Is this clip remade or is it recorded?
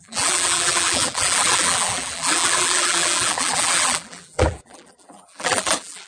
remade